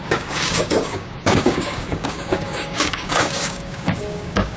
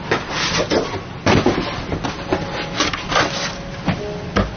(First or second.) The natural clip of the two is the second